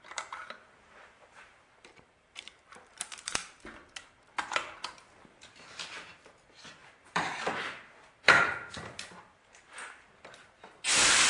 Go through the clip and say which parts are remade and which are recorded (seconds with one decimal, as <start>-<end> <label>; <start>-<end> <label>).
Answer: 0.0-11.3 remade